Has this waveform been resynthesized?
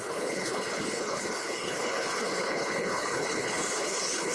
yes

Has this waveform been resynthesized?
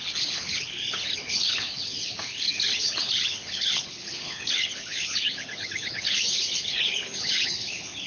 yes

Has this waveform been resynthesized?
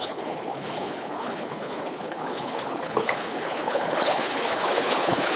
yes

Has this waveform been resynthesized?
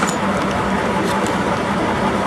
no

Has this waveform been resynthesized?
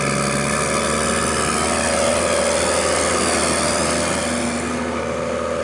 no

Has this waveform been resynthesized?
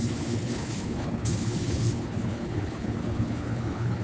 yes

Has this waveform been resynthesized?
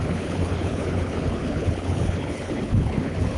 yes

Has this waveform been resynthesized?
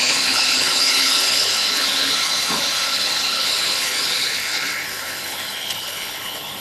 yes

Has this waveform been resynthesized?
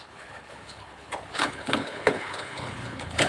yes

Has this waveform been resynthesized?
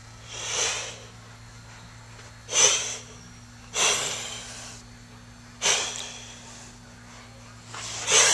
no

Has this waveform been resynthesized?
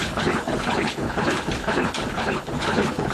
yes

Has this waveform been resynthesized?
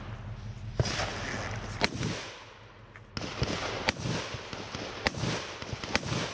no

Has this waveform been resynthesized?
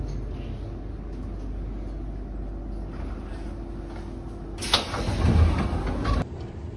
no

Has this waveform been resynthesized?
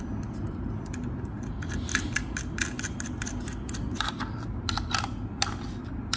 no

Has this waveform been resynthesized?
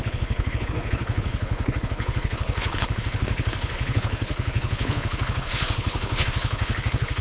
yes